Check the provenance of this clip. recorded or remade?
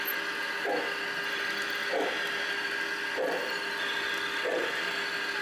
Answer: recorded